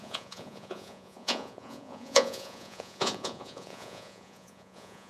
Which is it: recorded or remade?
remade